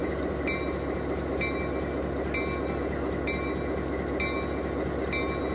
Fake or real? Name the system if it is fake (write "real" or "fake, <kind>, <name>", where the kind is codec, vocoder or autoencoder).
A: real